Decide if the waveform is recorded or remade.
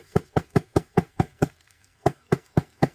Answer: remade